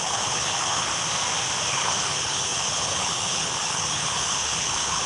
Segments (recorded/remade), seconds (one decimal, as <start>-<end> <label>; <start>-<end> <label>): 0.0-0.9 remade; 0.9-1.7 recorded; 1.7-5.1 remade